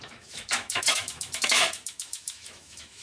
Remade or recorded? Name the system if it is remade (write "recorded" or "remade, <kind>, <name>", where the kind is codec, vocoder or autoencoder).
remade, autoencoder, DAC-VAE